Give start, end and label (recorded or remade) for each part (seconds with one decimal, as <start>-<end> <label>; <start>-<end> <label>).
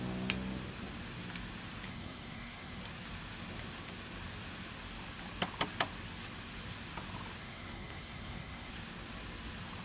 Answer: 0.0-1.9 recorded; 1.9-2.8 remade; 2.8-7.4 recorded; 7.4-8.7 remade; 8.7-9.8 recorded